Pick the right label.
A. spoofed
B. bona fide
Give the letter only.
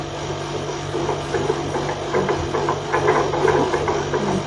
B